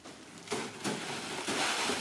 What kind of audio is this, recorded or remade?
recorded